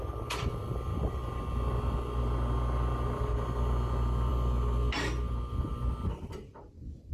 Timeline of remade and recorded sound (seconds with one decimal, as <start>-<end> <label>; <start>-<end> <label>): 0.0-0.9 recorded; 0.9-1.4 remade; 1.4-7.1 recorded